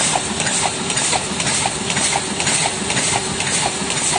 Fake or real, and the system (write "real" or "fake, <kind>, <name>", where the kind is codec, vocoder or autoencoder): real